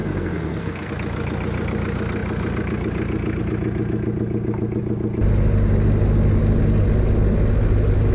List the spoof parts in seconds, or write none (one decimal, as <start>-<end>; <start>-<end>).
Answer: 0.0-0.9